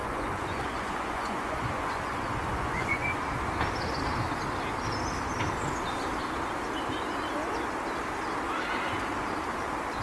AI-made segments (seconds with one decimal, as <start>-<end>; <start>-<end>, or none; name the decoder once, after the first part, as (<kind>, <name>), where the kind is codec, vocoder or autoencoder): 0.0-3.2 (vocoder, Vocos)